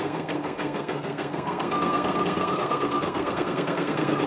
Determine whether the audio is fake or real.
fake